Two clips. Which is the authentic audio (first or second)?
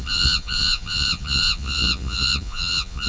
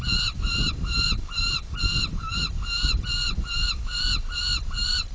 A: second